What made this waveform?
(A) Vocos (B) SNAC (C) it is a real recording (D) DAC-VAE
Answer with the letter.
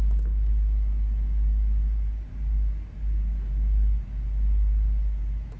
D